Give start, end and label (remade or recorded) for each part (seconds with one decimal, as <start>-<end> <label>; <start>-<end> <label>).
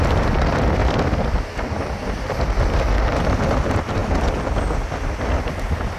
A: 0.0-6.0 recorded